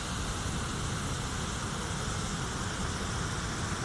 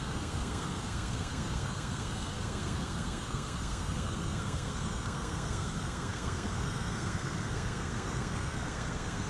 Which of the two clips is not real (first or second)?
second